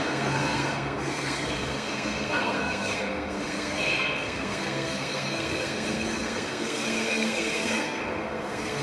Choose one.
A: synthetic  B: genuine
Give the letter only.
A